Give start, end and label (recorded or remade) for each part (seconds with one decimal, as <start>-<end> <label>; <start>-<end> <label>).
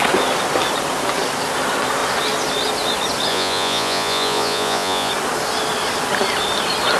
0.0-3.3 recorded; 3.3-5.1 remade; 5.1-7.0 recorded